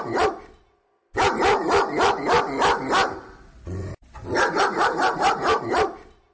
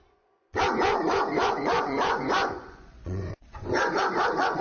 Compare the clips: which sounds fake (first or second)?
second